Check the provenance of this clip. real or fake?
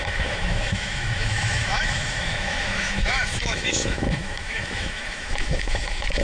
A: fake